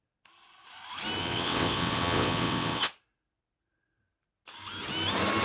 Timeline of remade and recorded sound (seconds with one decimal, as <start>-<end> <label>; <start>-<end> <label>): 0.0-1.2 recorded; 1.2-2.9 remade; 2.9-5.4 recorded